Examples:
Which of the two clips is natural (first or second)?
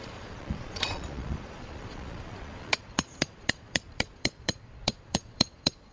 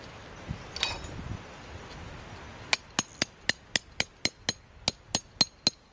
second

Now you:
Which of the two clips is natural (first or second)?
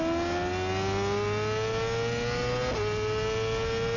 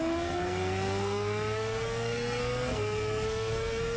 first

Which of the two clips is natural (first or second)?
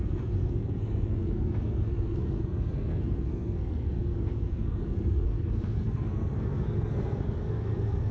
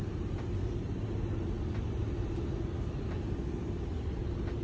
second